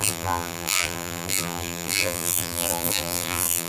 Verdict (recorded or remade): remade